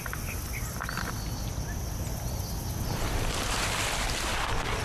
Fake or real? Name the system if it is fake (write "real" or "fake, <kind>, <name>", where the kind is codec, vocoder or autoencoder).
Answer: real